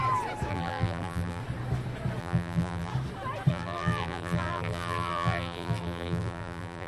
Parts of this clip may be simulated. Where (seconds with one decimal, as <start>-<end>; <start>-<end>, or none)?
0.5-1.4; 2.2-2.9; 3.5-6.9